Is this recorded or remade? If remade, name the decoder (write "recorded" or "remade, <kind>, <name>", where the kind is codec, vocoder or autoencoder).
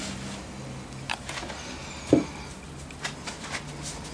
recorded